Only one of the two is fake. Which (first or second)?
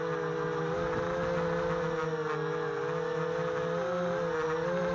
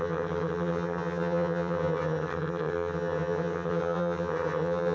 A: second